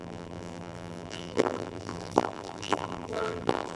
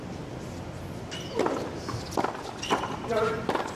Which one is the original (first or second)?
second